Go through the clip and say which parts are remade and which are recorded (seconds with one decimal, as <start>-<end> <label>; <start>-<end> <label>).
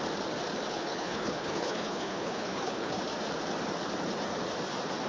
0.0-0.7 recorded; 0.7-3.0 remade; 3.0-5.1 recorded